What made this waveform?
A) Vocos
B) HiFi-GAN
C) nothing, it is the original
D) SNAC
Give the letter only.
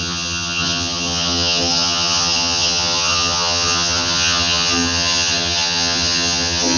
B